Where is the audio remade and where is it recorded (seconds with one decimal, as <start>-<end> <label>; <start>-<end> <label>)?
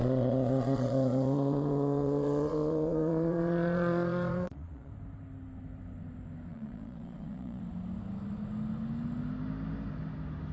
0.0-4.9 remade; 4.9-6.5 recorded; 6.5-7.6 remade; 7.6-10.5 recorded